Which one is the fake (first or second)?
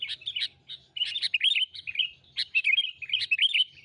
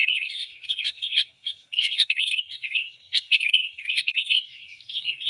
second